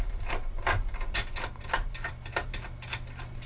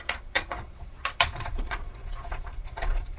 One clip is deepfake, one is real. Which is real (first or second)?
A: first